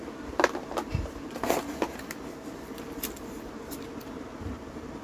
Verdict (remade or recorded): recorded